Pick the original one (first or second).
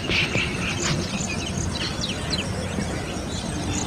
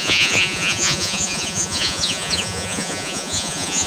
first